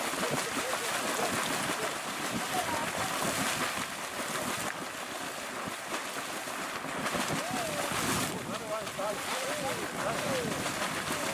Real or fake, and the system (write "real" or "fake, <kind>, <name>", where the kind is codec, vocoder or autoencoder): real